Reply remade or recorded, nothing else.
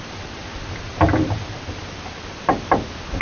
recorded